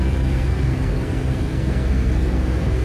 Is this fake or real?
fake